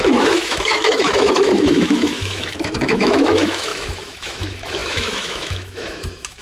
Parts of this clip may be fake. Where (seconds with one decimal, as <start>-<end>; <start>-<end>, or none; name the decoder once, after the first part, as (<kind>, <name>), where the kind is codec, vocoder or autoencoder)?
0.0-6.4 (autoencoder, DAC-VAE)